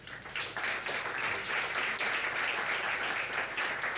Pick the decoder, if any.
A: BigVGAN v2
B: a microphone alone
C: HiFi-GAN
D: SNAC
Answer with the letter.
B